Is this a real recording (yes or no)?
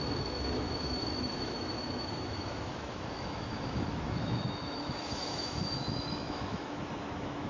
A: no